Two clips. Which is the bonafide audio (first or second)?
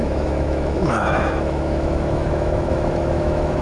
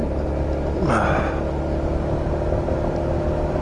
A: second